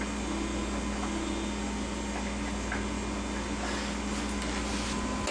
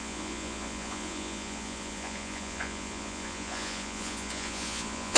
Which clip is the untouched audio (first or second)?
first